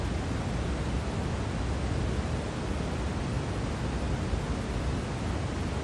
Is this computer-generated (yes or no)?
no